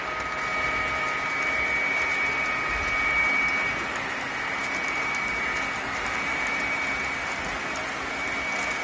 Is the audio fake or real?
real